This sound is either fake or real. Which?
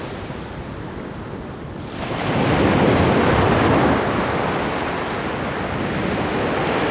real